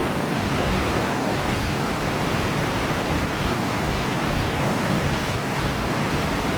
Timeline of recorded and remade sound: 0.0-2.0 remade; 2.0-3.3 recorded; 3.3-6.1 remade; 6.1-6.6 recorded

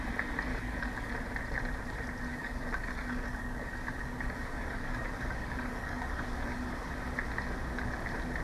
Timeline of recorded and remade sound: 0.0-0.5 recorded; 0.5-1.1 remade; 1.1-2.3 recorded; 2.3-6.9 remade; 6.9-8.4 recorded

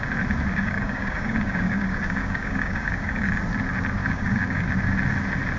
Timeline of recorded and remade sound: 0.0-0.5 recorded; 0.5-3.3 remade; 3.3-4.0 recorded; 4.0-4.7 remade; 4.7-5.6 recorded